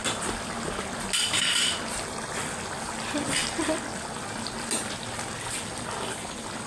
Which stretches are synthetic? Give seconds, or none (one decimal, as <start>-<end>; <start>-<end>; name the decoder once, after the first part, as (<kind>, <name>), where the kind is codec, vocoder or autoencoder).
none